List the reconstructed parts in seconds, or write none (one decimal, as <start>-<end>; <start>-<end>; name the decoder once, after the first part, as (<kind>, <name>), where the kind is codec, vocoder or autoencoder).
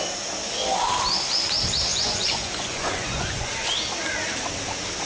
1.9-3.7 (vocoder, Vocos)